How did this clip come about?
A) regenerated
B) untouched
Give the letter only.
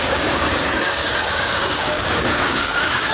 A